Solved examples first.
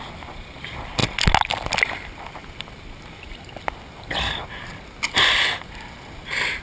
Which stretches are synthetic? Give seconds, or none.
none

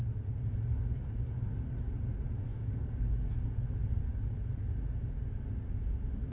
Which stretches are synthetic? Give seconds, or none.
2.5-3.2 (codec, DAC)